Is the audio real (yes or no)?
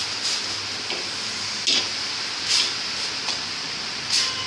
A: yes